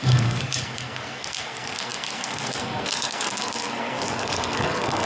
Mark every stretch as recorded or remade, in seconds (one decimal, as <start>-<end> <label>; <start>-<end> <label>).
0.0-5.1 remade